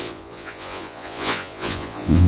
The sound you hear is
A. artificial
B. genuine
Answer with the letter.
A